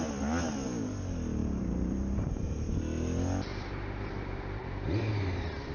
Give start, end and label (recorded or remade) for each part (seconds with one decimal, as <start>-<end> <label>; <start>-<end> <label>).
0.0-1.4 recorded; 1.4-2.8 remade; 2.8-3.5 recorded; 3.5-5.7 remade